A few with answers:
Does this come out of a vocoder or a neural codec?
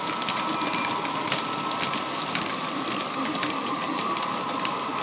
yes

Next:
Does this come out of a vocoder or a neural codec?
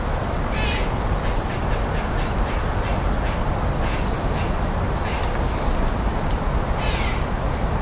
no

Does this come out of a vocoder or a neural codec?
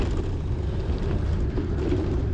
yes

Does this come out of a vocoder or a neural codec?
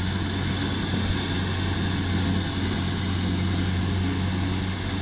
no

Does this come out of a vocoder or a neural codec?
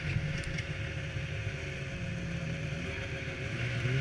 yes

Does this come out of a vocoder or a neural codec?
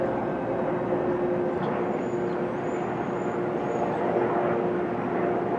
no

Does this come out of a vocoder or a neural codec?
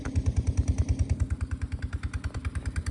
yes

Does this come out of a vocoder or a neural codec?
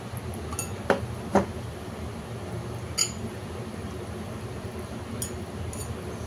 no